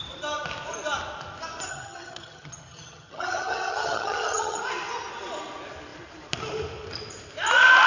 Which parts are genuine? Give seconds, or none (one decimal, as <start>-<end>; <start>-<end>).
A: 0.0-1.7; 4.6-7.9